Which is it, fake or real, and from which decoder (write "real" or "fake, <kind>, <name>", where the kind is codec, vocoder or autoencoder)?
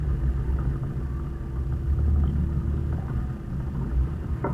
real